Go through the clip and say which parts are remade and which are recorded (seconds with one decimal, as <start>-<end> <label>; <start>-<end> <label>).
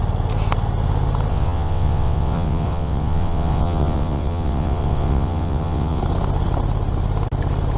0.0-1.3 recorded; 1.3-6.0 remade; 6.0-7.8 recorded